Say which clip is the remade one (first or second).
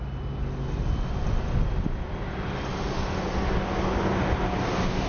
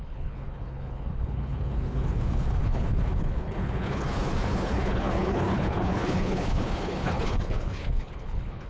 second